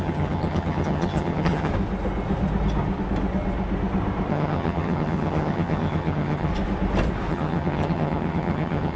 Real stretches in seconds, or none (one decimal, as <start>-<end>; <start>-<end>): 1.7-4.3; 6.5-7.3